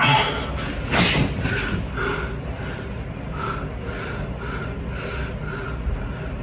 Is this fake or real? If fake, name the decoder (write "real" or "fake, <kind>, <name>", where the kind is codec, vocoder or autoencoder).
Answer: real